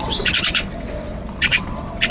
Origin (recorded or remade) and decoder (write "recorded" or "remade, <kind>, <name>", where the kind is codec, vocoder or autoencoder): remade, vocoder, WaveNeXt